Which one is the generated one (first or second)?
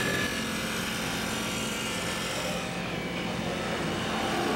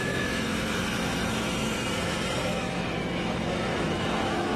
second